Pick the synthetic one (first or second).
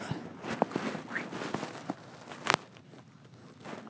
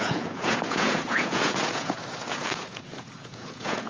second